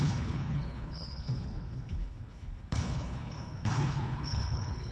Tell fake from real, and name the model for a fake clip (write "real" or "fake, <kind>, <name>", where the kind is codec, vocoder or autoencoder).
fake, codec, HILCodec